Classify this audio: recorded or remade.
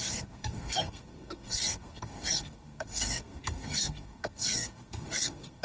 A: remade